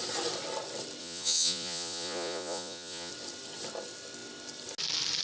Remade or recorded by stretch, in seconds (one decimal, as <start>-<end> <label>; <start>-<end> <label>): 0.0-1.0 recorded; 1.0-3.1 remade; 3.1-5.2 recorded